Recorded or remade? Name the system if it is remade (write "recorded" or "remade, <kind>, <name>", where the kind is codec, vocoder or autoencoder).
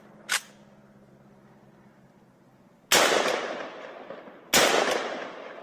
recorded